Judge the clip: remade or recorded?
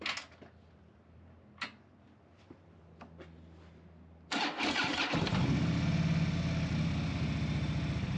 recorded